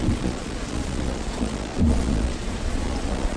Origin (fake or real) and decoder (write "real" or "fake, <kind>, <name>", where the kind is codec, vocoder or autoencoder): fake, vocoder, Vocos